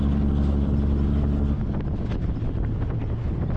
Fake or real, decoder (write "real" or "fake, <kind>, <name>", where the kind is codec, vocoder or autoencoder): real